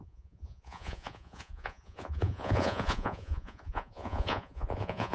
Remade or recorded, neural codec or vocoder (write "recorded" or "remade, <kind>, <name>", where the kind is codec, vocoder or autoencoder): remade, vocoder, Vocos